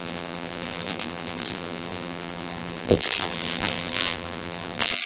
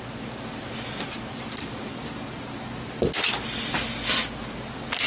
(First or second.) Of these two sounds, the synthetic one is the first